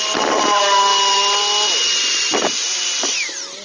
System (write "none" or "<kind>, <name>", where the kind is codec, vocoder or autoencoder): none